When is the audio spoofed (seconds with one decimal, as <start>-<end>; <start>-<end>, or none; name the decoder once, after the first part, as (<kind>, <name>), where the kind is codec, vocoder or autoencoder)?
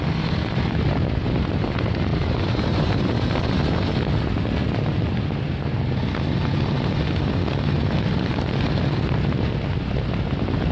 2.1-3.6 (vocoder, BigVGAN v2)